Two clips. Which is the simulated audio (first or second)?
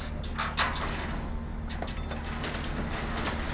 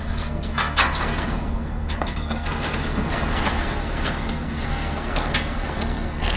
second